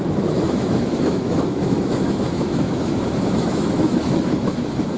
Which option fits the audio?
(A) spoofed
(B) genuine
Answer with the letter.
A